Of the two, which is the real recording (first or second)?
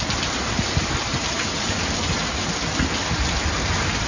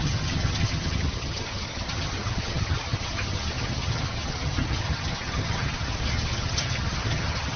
first